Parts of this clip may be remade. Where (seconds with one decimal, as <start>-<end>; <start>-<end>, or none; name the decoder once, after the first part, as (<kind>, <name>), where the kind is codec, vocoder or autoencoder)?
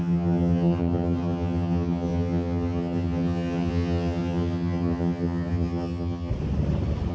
0.0-6.3 (vocoder, HiFi-GAN)